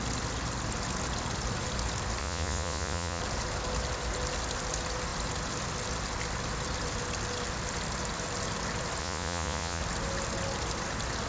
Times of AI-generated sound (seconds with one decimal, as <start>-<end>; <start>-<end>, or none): 2.2-3.2; 9.0-9.8